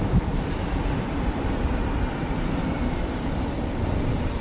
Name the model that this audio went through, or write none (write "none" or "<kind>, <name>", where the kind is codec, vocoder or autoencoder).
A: vocoder, BigVGAN v2